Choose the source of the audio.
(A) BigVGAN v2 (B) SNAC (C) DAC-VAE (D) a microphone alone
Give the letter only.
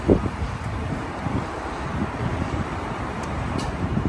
A